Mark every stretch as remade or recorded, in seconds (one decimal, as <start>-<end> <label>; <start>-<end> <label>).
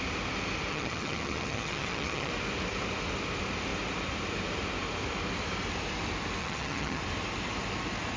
0.0-0.7 recorded; 0.7-2.3 remade; 2.3-6.4 recorded; 6.4-7.0 remade; 7.0-8.2 recorded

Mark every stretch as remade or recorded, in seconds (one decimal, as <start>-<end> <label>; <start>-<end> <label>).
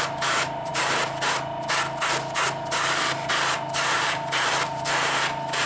0.0-0.7 remade; 0.7-3.9 recorded; 3.9-5.7 remade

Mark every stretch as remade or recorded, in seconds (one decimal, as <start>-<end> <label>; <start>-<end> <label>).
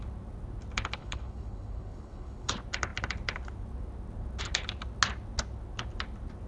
0.0-1.0 recorded; 1.0-2.5 remade; 2.5-6.5 recorded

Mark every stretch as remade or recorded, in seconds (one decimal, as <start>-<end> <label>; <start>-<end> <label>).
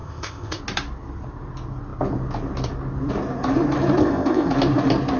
0.0-0.6 remade; 0.6-4.0 recorded; 4.0-4.5 remade; 4.5-5.2 recorded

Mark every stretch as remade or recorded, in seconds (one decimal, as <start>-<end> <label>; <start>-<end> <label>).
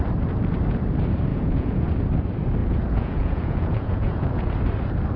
0.0-1.3 recorded; 1.3-1.9 remade; 1.9-2.6 recorded; 2.6-4.5 remade; 4.5-5.2 recorded